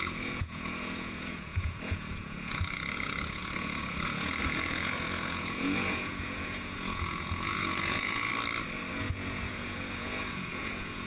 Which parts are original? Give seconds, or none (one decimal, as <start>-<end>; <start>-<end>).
8.3-8.9